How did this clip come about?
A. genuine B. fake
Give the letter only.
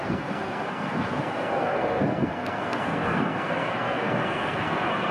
B